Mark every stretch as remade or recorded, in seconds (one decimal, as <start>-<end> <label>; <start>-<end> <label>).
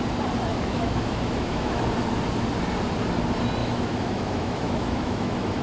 0.0-0.5 recorded; 0.5-1.8 remade; 1.8-3.6 recorded; 3.6-5.6 remade